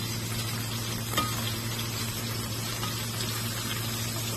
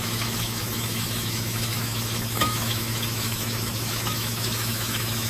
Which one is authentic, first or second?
first